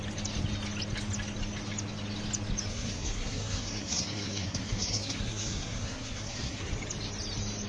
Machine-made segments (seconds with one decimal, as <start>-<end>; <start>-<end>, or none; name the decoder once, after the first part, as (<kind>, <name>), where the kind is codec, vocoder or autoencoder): 2.7-6.7 (codec, SNAC)

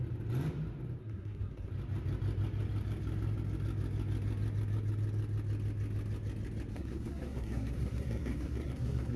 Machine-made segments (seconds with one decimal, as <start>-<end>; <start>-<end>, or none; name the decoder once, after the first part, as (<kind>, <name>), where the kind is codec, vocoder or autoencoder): 1.0-1.7 (codec, SNAC); 6.7-9.2

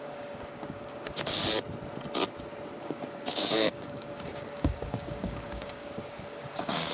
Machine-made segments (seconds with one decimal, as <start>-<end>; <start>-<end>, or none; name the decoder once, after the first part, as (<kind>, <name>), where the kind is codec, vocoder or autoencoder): 0.0-1.4 (codec, DAC); 2.8-6.9